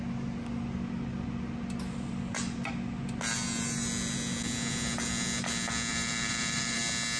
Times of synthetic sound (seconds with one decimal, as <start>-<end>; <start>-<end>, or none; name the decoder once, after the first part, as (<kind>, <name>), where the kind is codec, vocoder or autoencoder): 5.9-6.8 (vocoder, BigVGAN v2)